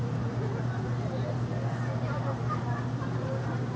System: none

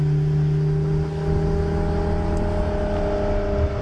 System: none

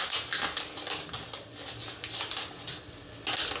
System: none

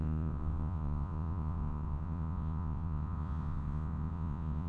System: vocoder, Vocos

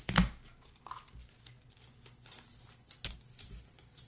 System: none